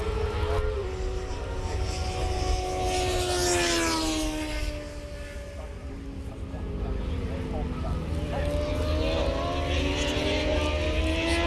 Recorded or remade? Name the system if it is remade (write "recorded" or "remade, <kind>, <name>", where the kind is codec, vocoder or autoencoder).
recorded